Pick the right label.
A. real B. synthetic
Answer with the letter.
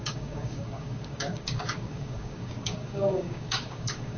B